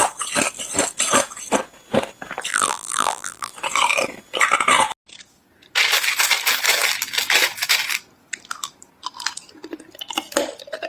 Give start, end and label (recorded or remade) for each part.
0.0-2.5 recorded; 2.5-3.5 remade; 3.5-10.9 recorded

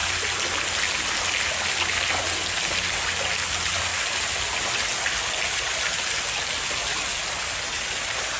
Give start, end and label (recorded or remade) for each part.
0.0-8.4 recorded

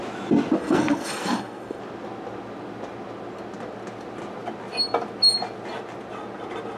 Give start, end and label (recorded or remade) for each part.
0.0-0.6 recorded; 0.6-1.8 remade; 1.8-6.8 recorded

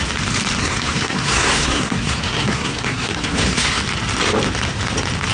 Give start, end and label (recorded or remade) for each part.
0.0-0.6 recorded; 0.6-3.8 remade; 3.8-5.3 recorded

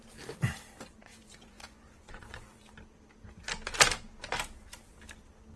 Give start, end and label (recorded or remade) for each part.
0.0-1.0 recorded; 1.0-2.7 remade; 2.7-5.6 recorded

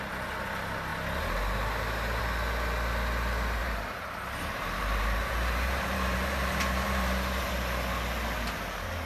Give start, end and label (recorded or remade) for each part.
0.0-3.6 recorded; 3.6-7.5 remade; 7.5-9.1 recorded

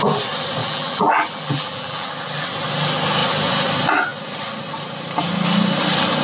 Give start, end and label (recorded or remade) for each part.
0.0-0.6 recorded; 0.6-2.1 remade; 2.1-6.2 recorded

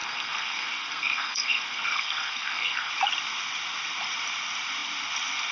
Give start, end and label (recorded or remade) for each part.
0.0-2.9 remade; 2.9-5.5 recorded